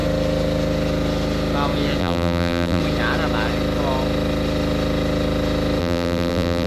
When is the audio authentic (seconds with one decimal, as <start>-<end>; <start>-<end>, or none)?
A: 0.0-2.0; 2.8-5.8